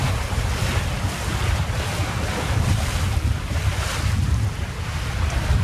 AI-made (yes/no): yes